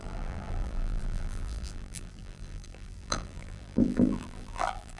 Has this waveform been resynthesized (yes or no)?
yes